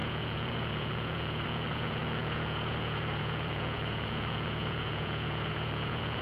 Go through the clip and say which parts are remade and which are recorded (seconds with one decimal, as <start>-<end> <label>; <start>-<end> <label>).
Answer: 0.0-6.2 remade